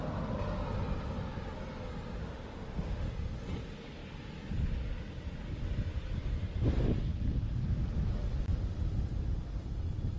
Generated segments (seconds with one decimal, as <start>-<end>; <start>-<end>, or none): 2.2-3.1